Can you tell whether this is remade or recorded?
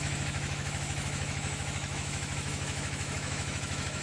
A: remade